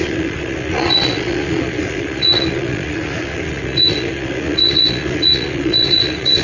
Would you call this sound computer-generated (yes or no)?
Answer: yes